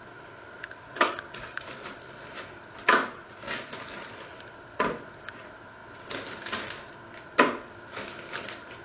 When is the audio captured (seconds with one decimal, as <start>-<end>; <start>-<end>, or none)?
0.0-0.6; 1.6-8.8